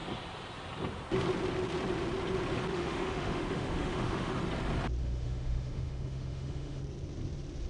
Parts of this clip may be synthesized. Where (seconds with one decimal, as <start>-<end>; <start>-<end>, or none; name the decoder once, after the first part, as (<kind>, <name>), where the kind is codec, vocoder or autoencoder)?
2.7-4.3 (autoencoder, DAC-VAE); 5.0-6.8